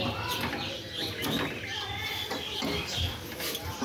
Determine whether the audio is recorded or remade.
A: recorded